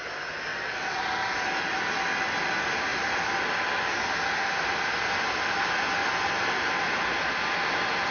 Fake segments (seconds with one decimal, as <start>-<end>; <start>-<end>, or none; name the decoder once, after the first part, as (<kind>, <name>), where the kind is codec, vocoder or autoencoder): 0.5-1.0 (vocoder, WaveNeXt)

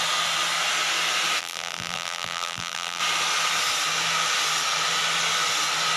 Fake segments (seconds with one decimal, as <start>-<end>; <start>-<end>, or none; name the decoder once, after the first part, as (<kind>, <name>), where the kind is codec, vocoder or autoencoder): 1.4-3.0 (vocoder, BigVGAN v2)

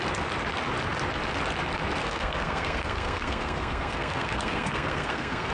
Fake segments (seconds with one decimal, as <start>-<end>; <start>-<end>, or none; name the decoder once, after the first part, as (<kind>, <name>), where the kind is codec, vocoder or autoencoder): 2.0-5.5 (codec, SNAC)

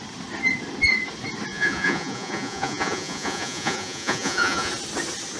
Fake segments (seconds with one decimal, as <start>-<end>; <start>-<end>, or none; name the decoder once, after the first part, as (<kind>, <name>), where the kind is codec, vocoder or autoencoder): 1.5-4.7 (vocoder, Vocos)

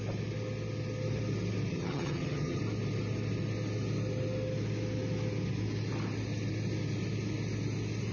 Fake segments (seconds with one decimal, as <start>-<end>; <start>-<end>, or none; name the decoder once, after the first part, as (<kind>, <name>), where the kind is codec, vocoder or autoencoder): 1.7-2.6 (vocoder, HiFi-GAN)

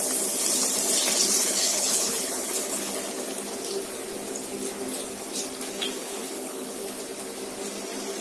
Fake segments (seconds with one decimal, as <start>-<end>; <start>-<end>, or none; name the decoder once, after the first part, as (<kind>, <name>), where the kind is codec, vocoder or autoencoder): 1.4-2.9 (codec, HILCodec); 6.0-7.0

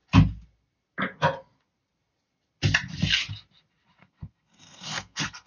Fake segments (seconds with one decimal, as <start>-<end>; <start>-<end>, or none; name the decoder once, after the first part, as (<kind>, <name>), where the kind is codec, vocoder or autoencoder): 4.0-5.5 (codec, SNAC)